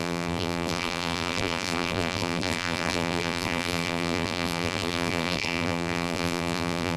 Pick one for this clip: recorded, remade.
remade